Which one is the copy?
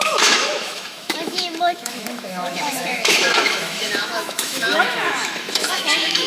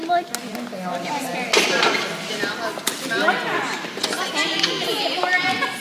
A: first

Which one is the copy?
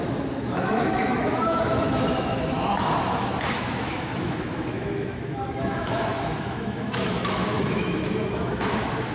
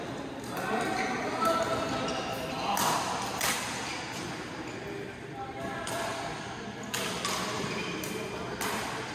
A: first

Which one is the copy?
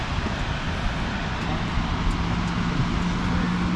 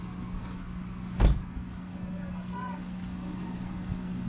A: second